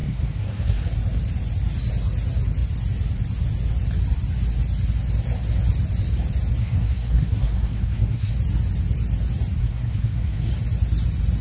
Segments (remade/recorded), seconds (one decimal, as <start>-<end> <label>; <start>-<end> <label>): 0.0-0.8 remade; 0.8-6.6 recorded; 6.6-8.3 remade; 8.3-9.6 recorded; 9.6-10.5 remade; 10.5-11.4 recorded